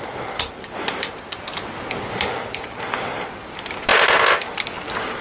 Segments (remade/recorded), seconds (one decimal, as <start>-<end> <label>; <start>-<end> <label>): 0.0-5.2 recorded